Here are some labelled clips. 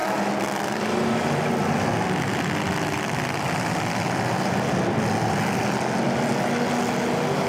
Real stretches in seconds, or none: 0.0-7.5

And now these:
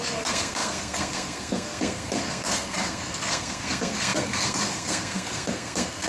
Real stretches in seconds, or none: none

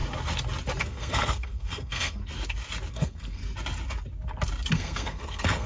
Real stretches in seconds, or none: 0.0-0.8; 2.2-2.9; 3.4-4.7